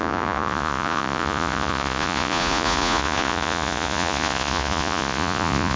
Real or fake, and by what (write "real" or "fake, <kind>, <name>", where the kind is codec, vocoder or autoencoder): fake, vocoder, Vocos